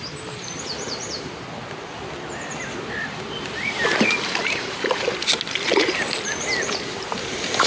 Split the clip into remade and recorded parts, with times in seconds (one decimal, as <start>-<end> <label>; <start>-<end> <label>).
0.0-7.7 recorded